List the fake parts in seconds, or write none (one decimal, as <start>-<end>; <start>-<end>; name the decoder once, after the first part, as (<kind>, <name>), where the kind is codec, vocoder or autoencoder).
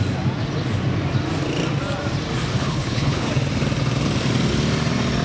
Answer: 2.6-3.3 (codec, HILCodec)